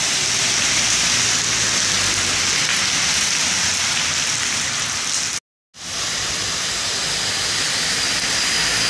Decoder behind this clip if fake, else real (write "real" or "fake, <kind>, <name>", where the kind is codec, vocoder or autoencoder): real